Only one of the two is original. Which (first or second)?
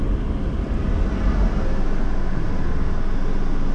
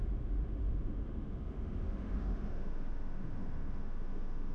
first